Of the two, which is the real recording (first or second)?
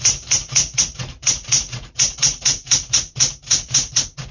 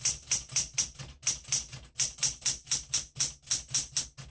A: second